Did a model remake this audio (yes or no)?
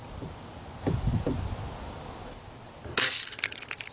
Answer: no